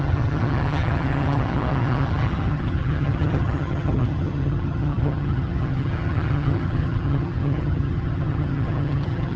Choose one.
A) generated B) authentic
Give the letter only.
A